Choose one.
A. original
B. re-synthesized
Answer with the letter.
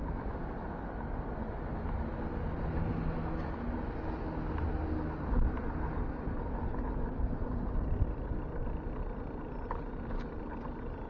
A